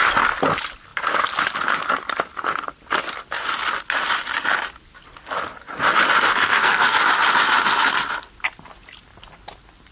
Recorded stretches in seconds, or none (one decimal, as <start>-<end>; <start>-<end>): 0.0-6.3; 7.0-9.9